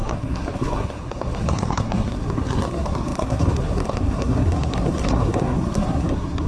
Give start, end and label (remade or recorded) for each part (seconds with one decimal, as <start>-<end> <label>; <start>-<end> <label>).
0.0-6.5 remade